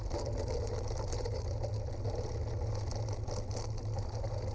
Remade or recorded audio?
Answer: recorded